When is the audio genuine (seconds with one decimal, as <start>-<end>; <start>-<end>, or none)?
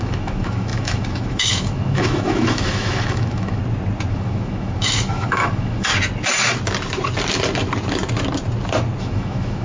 3.6-4.1; 5.9-9.0